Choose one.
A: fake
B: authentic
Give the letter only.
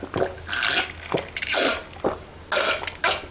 B